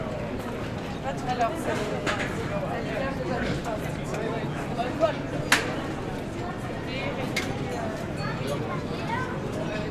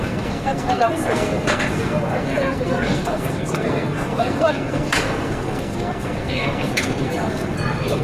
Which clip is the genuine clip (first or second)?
first